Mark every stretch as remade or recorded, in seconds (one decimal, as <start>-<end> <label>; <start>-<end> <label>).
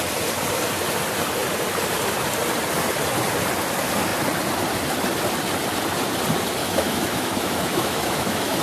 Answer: 0.0-6.6 recorded; 6.6-8.6 remade